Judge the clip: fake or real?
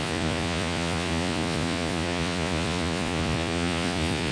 fake